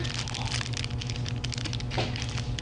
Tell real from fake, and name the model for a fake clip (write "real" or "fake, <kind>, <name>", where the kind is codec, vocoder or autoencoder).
real